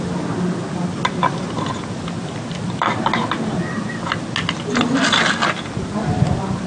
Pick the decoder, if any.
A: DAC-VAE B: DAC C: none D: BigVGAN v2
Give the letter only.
C